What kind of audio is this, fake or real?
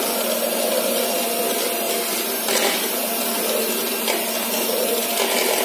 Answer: real